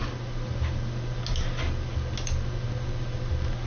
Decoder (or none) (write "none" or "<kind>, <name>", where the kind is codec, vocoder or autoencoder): none